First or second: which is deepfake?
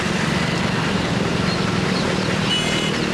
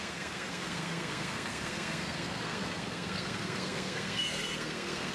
second